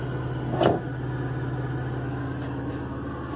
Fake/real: real